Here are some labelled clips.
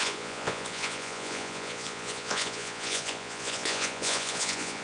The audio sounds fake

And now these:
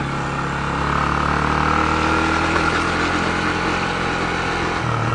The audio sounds real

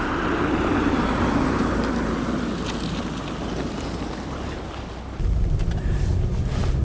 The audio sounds real